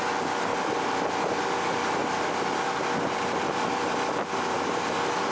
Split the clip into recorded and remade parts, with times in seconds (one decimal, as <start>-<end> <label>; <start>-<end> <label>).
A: 0.0-1.8 recorded; 1.8-5.3 remade